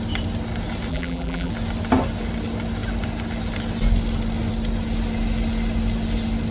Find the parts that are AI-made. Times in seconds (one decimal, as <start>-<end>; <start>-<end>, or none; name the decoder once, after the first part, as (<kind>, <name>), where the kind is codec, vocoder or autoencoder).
0.9-1.5 (vocoder, BigVGAN v2)